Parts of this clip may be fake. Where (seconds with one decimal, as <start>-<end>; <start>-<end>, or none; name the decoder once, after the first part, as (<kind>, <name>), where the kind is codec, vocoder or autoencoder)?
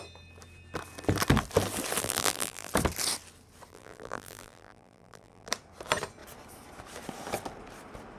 2.0-2.7 (vocoder, BigVGAN v2); 3.7-5.5